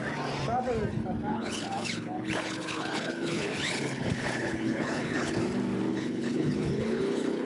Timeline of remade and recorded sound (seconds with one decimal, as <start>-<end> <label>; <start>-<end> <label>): 0.0-1.3 recorded; 1.3-5.4 remade; 5.4-5.9 recorded; 5.9-7.5 remade